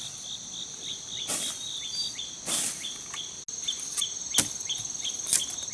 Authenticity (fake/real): real